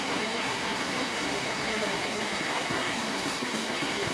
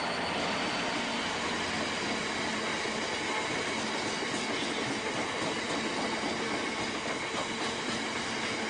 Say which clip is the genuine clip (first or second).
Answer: second